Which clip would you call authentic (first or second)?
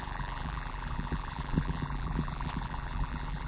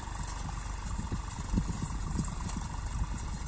second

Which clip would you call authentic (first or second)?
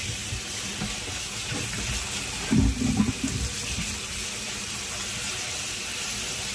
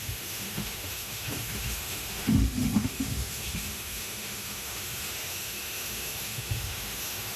first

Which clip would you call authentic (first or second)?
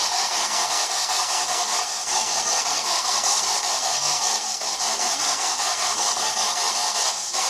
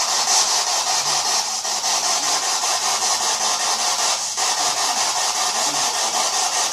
second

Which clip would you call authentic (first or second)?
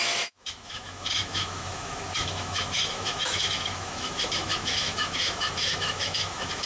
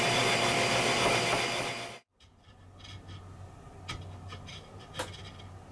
second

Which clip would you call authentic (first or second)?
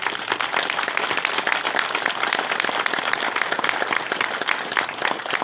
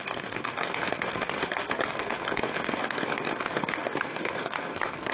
first